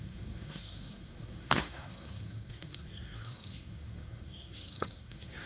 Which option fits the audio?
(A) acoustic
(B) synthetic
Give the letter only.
B